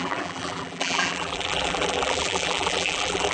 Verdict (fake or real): fake